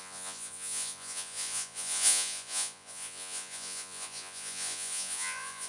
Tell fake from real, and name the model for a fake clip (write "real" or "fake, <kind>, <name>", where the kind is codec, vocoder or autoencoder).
fake, vocoder, Vocos